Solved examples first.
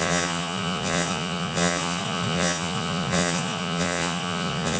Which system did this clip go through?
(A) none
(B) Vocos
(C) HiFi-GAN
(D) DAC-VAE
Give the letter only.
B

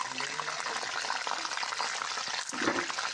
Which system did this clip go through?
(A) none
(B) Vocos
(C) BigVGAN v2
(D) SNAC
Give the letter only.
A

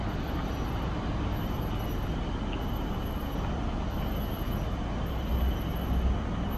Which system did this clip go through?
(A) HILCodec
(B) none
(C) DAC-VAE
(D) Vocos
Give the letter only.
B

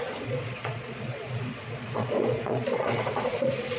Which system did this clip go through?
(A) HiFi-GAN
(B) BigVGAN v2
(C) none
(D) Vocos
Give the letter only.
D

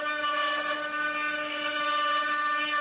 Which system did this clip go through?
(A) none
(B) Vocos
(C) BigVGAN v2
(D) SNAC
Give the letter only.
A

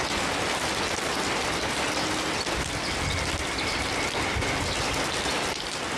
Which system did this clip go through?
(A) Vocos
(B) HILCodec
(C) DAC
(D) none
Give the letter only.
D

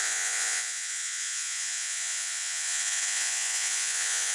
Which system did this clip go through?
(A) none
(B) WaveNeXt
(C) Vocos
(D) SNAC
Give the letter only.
C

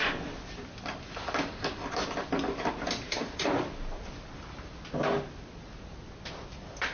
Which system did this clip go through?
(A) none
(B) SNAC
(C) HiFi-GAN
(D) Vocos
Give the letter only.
A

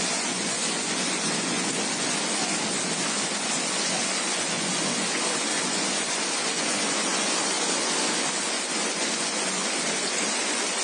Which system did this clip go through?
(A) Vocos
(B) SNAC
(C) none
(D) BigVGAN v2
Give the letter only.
A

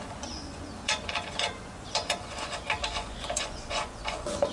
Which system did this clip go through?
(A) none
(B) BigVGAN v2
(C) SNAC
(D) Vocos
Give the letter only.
D